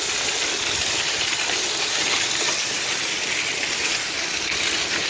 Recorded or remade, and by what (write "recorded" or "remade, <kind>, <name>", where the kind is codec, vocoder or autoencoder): recorded